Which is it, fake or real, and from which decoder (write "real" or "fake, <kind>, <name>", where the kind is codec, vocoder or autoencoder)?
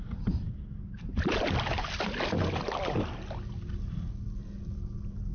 real